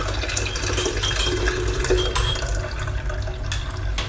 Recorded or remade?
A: recorded